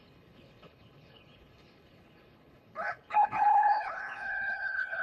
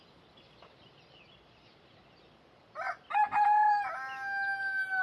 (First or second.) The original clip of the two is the second